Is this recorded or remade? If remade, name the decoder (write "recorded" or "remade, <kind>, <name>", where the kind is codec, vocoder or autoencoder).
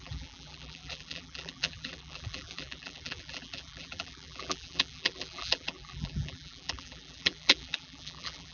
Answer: remade, vocoder, BigVGAN v2